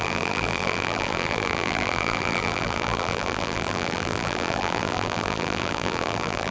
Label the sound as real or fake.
fake